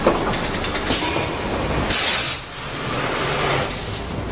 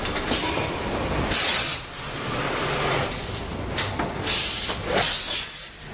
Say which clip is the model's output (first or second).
second